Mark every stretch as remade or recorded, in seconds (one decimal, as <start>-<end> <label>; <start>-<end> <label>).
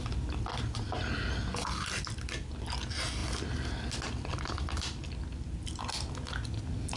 0.0-7.0 recorded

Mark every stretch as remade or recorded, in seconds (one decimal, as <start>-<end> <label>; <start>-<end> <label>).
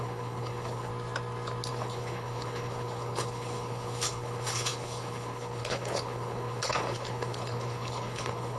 0.0-0.9 remade; 0.9-1.7 recorded; 1.7-8.6 remade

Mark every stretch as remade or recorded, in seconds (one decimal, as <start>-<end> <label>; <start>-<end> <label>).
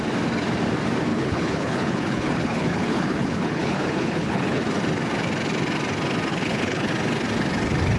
0.0-1.1 recorded; 1.1-4.6 remade; 4.6-6.3 recorded; 6.3-6.9 remade; 6.9-8.0 recorded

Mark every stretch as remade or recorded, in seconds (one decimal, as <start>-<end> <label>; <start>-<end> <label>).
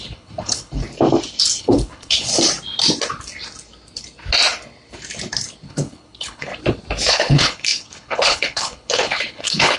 0.0-0.8 remade; 0.8-1.6 recorded; 1.6-2.3 remade; 2.3-5.7 recorded; 5.7-6.5 remade; 6.5-7.1 recorded; 7.1-9.8 remade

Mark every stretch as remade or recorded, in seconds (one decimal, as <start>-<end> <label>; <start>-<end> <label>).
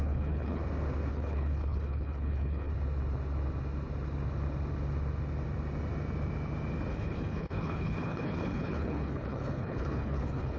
0.0-0.6 remade; 0.6-1.1 recorded; 1.1-2.7 remade; 2.7-6.9 recorded; 6.9-10.6 remade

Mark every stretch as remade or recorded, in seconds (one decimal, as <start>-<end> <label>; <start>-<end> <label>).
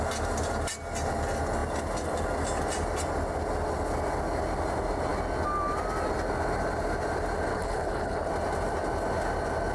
0.0-7.5 recorded; 7.5-8.3 remade; 8.3-9.7 recorded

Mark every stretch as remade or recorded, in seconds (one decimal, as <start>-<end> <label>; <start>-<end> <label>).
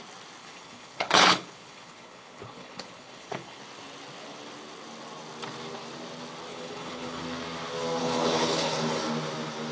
0.0-0.4 recorded; 0.4-3.6 remade; 3.6-6.5 recorded; 6.5-7.2 remade; 7.2-8.0 recorded; 8.0-9.0 remade; 9.0-9.7 recorded